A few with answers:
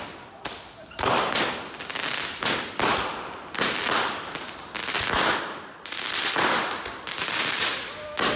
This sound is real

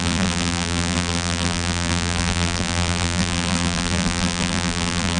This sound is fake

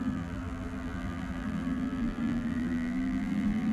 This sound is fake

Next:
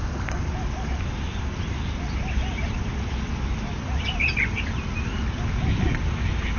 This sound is real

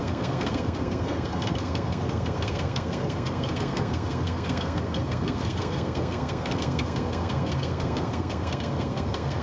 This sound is fake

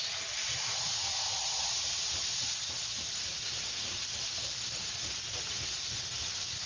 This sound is real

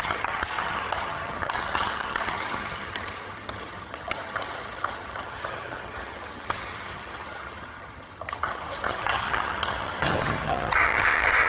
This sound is fake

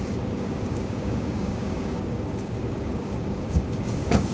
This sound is fake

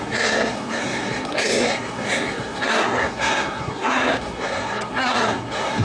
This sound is fake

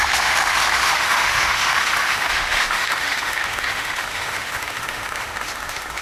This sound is fake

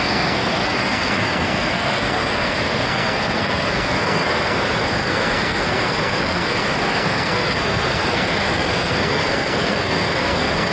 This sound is fake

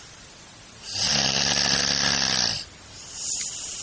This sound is fake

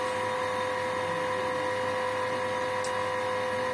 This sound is real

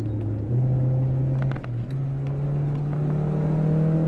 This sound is real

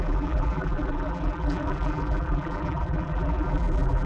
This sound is fake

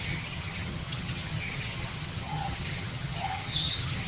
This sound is fake